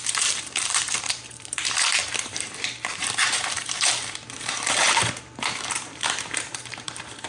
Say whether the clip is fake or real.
fake